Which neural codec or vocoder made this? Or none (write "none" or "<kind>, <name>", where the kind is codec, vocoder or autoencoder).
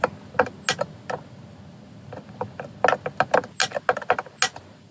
none